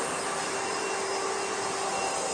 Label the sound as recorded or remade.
recorded